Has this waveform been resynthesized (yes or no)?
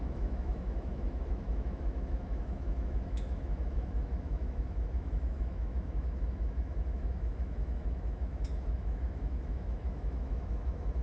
yes